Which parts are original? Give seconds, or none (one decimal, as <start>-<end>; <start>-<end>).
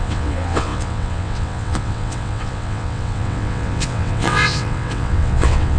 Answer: none